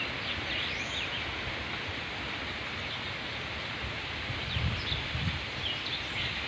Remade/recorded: recorded